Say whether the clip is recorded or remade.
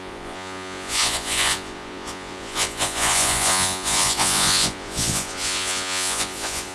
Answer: remade